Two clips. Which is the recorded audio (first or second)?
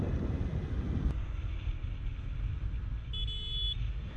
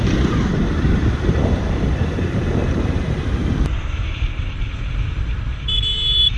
first